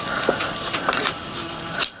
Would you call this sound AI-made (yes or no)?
no